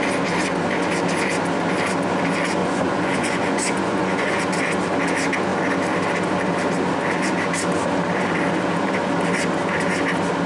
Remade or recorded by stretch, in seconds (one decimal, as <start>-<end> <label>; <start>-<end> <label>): 0.0-2.6 recorded; 2.6-4.4 remade; 4.4-10.5 recorded